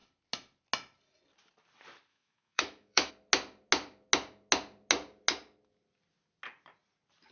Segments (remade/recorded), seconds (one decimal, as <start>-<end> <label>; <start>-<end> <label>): 0.0-2.1 recorded; 2.1-3.1 remade; 3.1-7.3 recorded